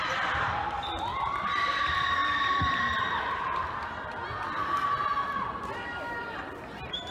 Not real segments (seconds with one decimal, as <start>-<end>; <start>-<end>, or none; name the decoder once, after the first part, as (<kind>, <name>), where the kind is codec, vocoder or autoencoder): 0.0-7.1 (vocoder, BigVGAN v2)